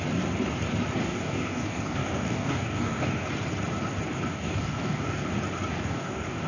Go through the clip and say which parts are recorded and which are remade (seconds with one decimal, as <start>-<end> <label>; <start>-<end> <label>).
0.0-1.0 recorded; 1.0-3.3 remade; 3.3-4.3 recorded; 4.3-5.3 remade; 5.3-5.7 recorded; 5.7-6.5 remade